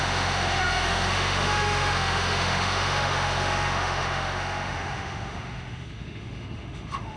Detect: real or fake fake